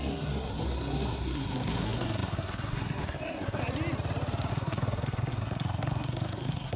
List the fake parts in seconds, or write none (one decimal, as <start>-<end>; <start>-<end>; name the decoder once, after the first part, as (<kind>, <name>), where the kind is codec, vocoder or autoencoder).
0.0-3.6 (codec, SNAC); 4.5-6.8

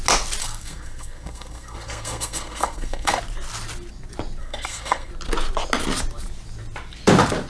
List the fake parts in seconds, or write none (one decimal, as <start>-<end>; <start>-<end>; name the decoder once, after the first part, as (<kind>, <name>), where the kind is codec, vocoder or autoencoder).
0.4-3.2 (codec, SNAC); 4.4-5.1